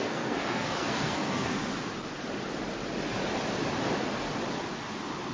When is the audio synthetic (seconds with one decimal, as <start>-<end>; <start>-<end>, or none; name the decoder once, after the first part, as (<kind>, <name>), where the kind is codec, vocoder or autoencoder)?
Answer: 0.0-1.7 (codec, SNAC)